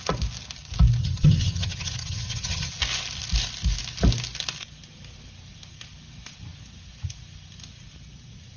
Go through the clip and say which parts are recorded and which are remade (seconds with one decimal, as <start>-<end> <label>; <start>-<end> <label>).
0.0-1.0 recorded; 1.0-2.7 remade; 2.7-8.6 recorded